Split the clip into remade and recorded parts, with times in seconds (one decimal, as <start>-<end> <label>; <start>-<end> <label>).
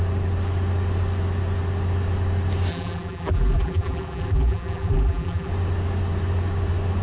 0.0-2.7 recorded; 2.7-5.5 remade; 5.5-7.0 recorded